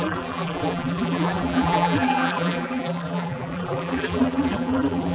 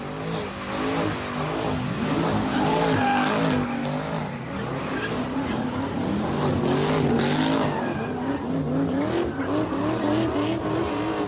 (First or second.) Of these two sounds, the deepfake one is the first